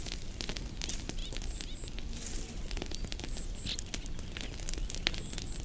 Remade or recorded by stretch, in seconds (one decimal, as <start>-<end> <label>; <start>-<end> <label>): 0.0-5.6 recorded